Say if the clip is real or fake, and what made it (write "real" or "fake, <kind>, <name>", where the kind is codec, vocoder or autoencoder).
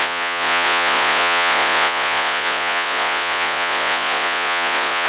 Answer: fake, vocoder, Vocos